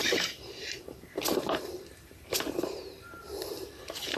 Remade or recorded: remade